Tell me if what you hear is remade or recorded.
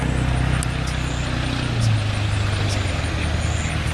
recorded